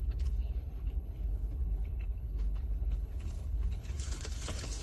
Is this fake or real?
fake